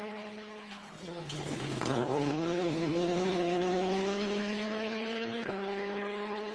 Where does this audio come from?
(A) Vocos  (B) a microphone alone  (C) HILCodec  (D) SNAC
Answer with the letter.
C